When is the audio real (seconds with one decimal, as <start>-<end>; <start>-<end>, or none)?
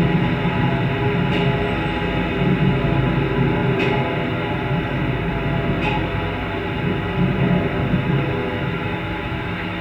0.0-8.4